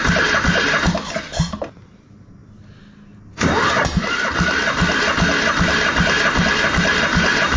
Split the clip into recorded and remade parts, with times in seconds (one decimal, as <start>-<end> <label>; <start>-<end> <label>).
0.0-7.6 recorded